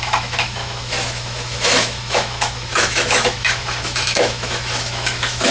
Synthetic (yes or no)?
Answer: yes